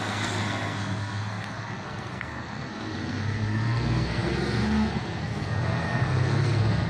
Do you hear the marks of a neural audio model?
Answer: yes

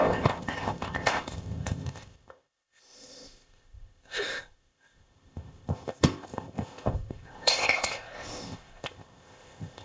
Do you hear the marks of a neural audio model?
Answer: yes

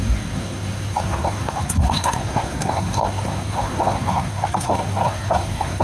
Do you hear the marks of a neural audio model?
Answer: yes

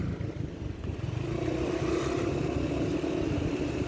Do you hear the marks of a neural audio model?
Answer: no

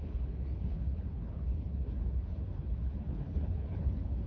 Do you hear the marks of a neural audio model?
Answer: yes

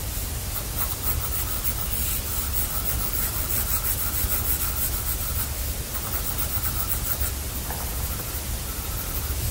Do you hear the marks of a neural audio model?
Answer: no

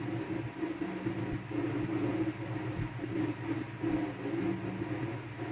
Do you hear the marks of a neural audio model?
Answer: no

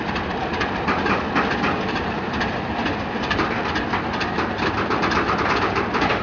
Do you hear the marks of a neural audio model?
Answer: yes